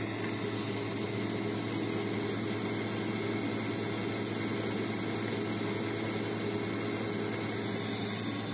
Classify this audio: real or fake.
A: real